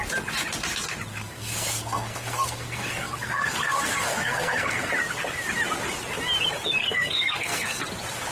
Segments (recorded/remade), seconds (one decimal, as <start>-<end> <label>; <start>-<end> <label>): 0.0-1.1 recorded; 1.1-4.9 remade; 4.9-6.8 recorded; 6.8-7.8 remade; 7.8-8.3 recorded